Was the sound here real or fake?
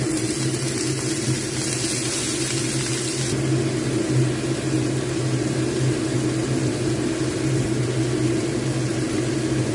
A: real